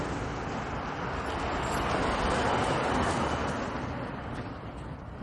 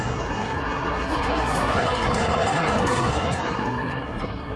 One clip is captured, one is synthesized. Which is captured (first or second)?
first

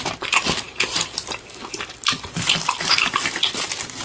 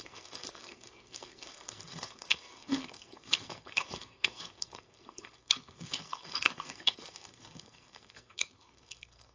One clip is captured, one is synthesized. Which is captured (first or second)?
first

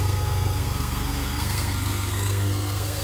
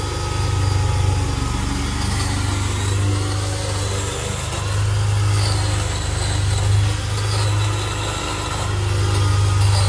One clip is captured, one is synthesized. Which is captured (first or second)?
second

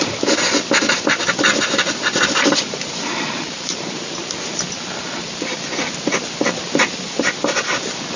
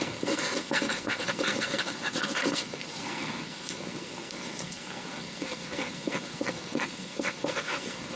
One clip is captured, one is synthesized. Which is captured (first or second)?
first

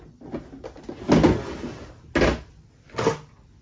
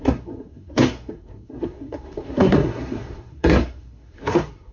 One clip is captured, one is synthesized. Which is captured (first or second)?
first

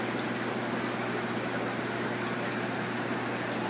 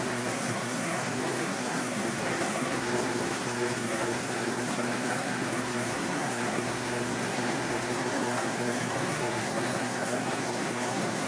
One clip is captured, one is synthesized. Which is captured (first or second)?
first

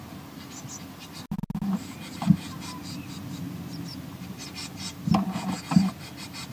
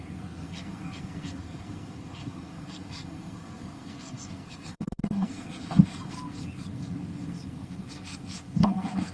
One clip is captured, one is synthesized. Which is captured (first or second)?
first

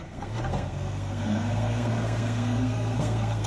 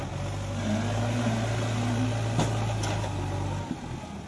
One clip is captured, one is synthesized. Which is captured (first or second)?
second